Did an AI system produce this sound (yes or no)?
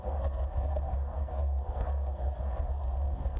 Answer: yes